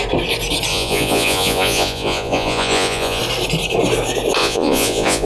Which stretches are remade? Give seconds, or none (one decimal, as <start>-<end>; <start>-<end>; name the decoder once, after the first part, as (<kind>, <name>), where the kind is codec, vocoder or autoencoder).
0.7-3.2 (vocoder, Vocos); 4.4-5.3